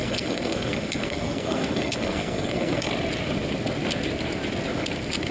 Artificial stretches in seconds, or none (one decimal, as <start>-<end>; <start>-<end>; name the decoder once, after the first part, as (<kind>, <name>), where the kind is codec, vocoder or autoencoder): 0.0-2.9 (codec, SNAC)